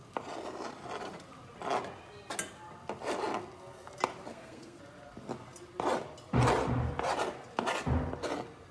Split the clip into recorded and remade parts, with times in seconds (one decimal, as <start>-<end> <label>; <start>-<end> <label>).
0.0-4.3 recorded; 4.3-4.8 remade; 4.8-8.7 recorded